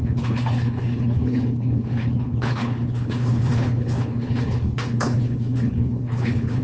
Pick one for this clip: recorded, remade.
remade